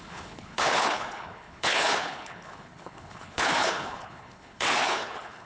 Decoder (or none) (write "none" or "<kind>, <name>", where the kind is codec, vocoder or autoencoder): codec, HILCodec